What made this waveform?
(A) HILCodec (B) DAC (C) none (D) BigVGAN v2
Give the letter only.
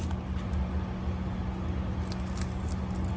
C